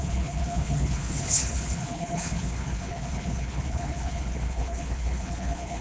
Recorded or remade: remade